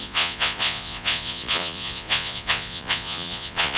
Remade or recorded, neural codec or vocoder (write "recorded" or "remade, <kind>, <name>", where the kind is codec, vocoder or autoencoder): remade, vocoder, Vocos